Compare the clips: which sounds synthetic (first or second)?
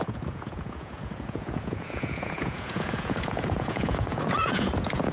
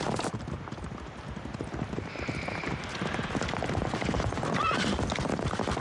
first